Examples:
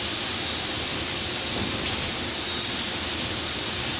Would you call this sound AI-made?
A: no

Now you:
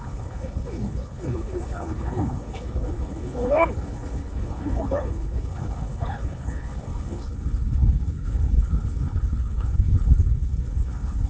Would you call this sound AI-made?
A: yes